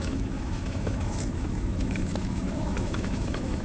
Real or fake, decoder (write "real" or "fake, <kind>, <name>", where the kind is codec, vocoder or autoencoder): fake, autoencoder, DAC-VAE